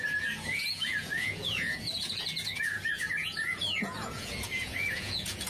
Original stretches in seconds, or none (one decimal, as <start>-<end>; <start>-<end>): none